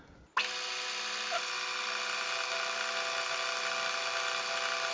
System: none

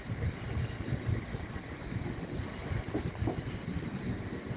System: none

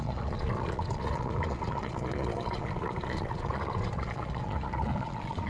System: vocoder, Vocos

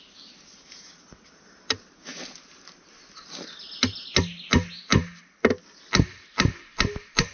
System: none